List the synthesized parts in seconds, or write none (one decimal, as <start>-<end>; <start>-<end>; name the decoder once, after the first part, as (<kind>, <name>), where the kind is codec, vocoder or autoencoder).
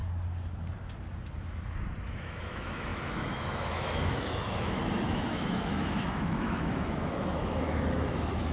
2.0-8.5 (autoencoder, DAC-VAE)